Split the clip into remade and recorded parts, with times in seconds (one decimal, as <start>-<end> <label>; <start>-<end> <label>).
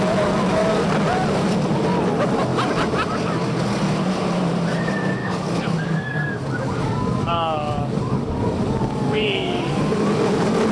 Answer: 0.0-5.2 recorded; 5.2-9.8 remade; 9.8-10.7 recorded